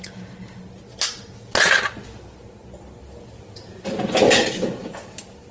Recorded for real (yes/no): yes